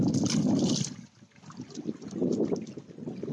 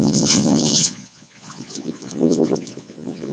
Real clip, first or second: first